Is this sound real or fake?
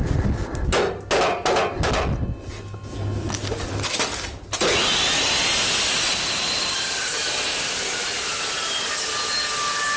real